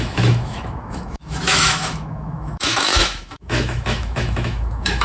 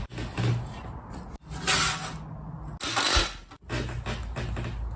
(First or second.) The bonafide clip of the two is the second